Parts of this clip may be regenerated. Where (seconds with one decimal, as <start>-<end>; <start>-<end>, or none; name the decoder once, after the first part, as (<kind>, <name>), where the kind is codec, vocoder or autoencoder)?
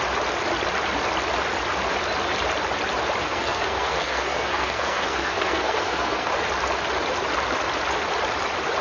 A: 3.2-6.3 (codec, SNAC)